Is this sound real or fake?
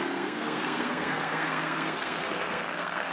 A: fake